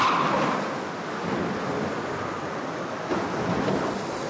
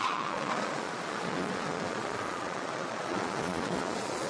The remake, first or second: second